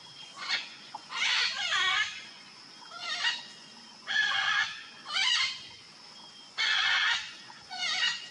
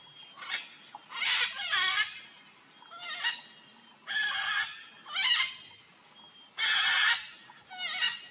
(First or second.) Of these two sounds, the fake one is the first